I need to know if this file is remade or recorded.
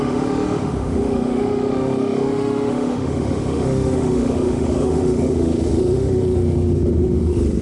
remade